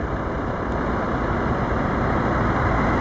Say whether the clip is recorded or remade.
recorded